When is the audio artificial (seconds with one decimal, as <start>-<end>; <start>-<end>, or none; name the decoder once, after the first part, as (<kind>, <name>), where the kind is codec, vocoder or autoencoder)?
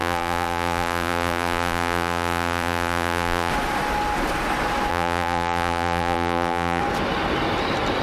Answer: 0.0-3.5 (vocoder, BigVGAN v2); 4.9-6.8